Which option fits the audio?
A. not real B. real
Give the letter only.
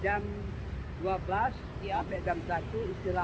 B